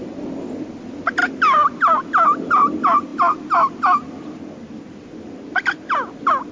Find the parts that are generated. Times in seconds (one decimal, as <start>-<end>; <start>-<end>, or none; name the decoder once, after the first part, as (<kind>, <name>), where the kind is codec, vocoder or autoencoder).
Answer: 0.0-6.5 (vocoder, BigVGAN v2)